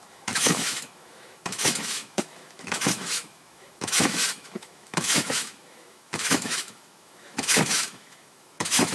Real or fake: fake